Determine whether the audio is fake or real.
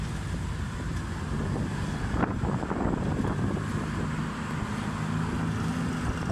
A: real